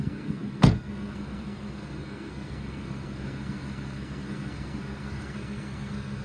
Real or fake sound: fake